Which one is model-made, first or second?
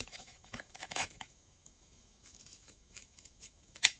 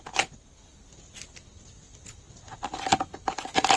first